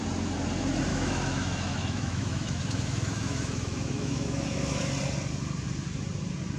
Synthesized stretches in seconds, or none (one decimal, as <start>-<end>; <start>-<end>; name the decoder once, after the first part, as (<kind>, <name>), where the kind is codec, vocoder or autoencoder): 0.9-4.9 (autoencoder, DAC-VAE)